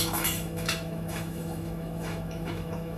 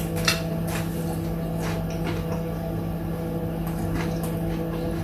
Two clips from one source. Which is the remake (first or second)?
first